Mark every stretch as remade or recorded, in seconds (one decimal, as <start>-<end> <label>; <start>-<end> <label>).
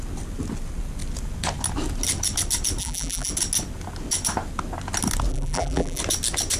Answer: 0.0-2.8 recorded; 2.8-3.3 remade; 3.3-5.3 recorded; 5.3-6.0 remade; 6.0-6.6 recorded